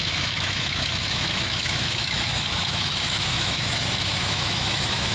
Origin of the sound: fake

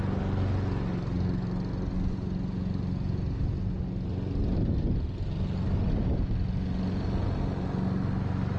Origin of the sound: real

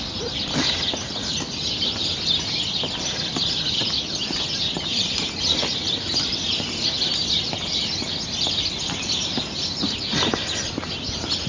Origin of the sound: real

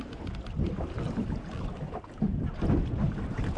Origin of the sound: real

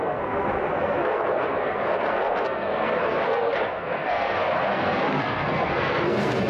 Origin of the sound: fake